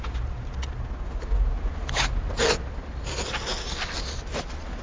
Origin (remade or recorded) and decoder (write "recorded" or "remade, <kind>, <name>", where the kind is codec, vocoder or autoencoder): recorded